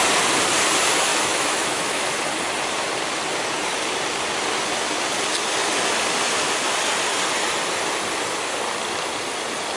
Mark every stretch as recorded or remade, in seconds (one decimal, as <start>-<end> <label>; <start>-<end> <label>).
0.0-1.1 recorded; 1.1-2.2 remade; 2.2-9.8 recorded